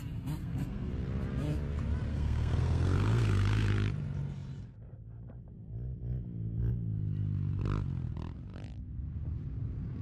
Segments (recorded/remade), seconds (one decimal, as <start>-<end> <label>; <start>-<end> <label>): 0.0-0.4 recorded; 0.4-0.9 remade; 0.9-2.1 recorded; 2.1-3.7 remade; 3.7-10.0 recorded